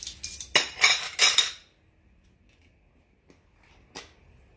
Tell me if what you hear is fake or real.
real